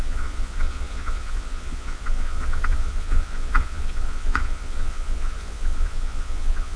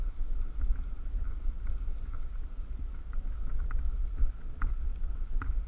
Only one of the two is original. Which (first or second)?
second